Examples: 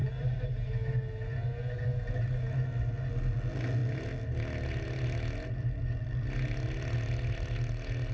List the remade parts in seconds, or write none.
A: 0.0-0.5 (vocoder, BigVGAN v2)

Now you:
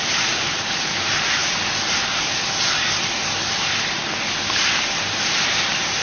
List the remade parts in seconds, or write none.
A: 0.0-1.4 (vocoder, BigVGAN v2); 4.9-6.0

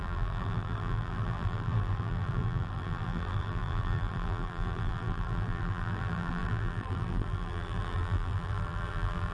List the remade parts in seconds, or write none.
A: 0.0-9.3 (vocoder, BigVGAN v2)

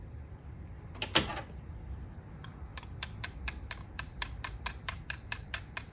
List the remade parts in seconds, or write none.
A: 0.0-1.3 (vocoder, BigVGAN v2); 1.9-5.9